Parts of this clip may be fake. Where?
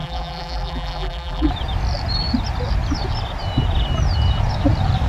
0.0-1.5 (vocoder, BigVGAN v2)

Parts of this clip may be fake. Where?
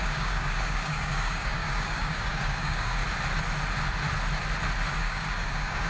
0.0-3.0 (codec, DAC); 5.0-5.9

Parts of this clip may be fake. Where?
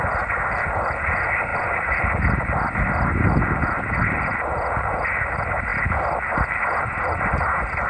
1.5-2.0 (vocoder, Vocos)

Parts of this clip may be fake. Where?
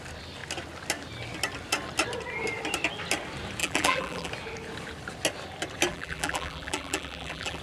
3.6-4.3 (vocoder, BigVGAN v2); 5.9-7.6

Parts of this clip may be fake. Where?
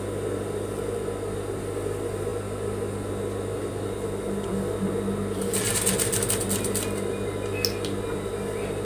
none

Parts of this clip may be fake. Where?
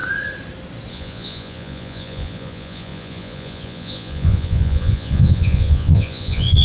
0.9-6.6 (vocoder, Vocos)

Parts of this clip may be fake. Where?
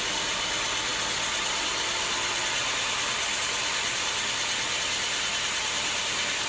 none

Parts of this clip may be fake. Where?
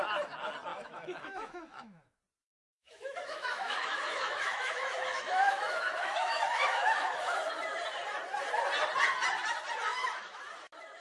0.7-2.2 (autoencoder, DAC-VAE); 2.7-7.5; 9.9-10.4